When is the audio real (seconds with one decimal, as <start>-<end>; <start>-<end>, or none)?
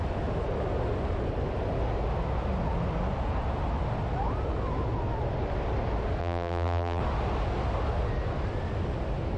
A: 0.0-6.2; 7.0-9.4